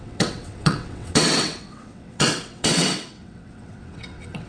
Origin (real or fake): fake